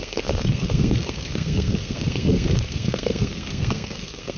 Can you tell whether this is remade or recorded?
remade